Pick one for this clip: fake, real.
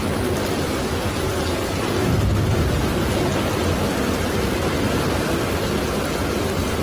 real